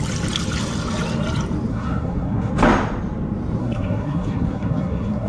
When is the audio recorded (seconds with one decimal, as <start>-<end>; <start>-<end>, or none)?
0.0-1.7; 2.5-3.6